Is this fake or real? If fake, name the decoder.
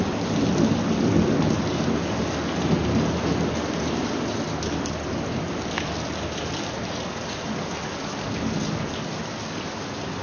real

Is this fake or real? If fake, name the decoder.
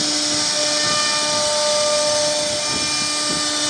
real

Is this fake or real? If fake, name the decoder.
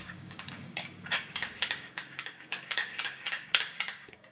fake, codec, DAC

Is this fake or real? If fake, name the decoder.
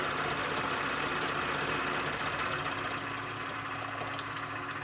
real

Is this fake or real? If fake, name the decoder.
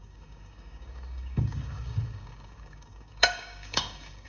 fake, codec, DAC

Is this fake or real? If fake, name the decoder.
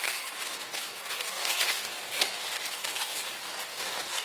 fake, codec, DAC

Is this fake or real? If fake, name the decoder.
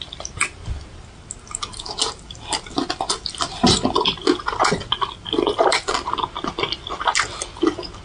real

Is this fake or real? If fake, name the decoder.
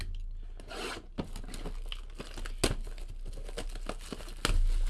real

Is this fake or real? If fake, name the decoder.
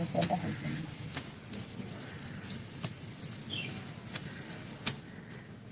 real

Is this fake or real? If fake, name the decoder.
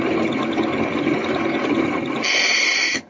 real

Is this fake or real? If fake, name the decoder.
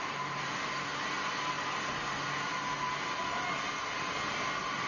real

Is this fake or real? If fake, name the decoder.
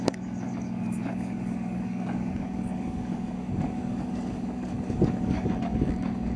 fake, codec, DAC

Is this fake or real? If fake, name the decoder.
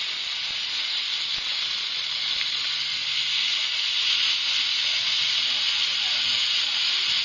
real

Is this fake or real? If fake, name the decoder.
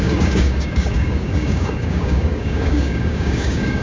fake, codec, DAC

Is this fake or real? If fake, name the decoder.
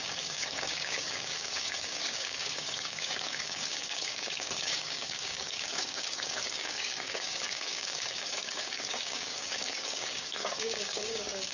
fake, codec, DAC